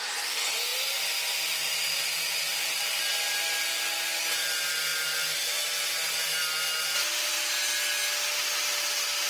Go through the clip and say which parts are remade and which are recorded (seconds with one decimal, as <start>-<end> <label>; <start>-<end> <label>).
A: 0.0-9.3 recorded